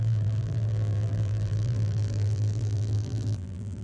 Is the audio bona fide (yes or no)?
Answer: no